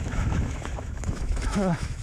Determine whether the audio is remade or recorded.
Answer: remade